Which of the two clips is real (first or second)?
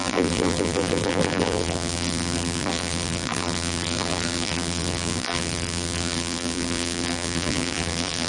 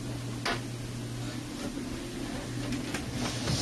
second